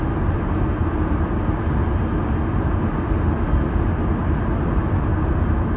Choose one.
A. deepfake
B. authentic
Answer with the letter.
B